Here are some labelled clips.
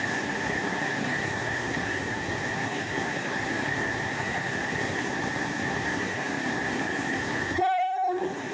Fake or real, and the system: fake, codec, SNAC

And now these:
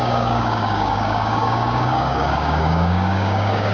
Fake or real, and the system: fake, codec, DAC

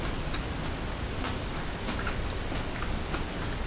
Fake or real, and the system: real